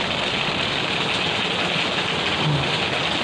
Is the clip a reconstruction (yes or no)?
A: no